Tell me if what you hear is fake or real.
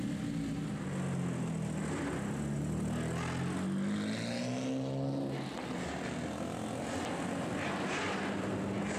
real